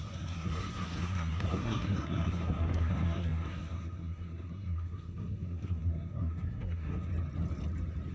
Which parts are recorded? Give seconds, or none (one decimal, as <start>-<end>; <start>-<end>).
7.1-8.1